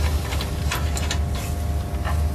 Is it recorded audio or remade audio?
recorded